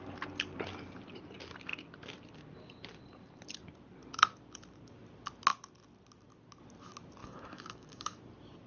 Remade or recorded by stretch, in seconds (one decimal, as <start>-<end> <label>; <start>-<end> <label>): 0.0-7.2 recorded; 7.2-8.2 remade; 8.2-8.7 recorded